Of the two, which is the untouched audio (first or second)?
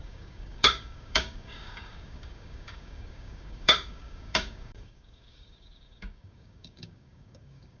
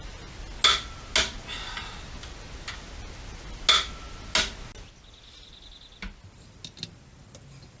second